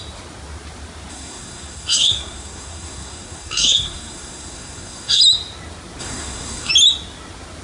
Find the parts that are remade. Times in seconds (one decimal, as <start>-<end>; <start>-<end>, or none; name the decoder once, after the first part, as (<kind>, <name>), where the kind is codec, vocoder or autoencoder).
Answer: 1.1-5.2 (codec, SNAC); 6.0-6.7